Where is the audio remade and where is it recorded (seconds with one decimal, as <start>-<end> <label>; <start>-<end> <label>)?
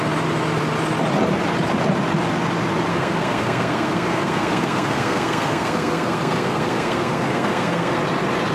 0.0-2.9 recorded; 2.9-8.0 remade; 8.0-8.5 recorded